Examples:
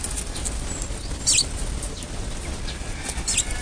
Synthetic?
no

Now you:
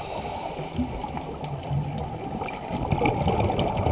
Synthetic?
no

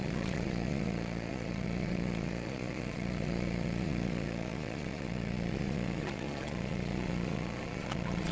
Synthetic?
yes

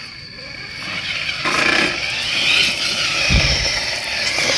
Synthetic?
no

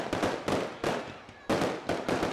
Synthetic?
no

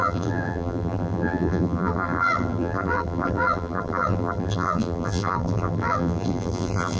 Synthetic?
yes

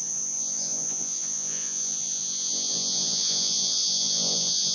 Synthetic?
yes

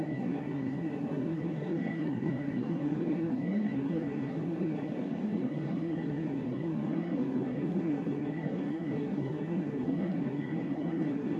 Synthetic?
yes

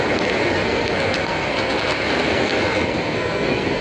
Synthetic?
yes